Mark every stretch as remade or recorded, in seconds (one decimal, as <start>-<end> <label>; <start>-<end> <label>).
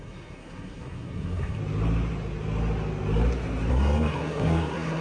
0.0-1.6 remade; 1.6-3.7 recorded; 3.7-5.0 remade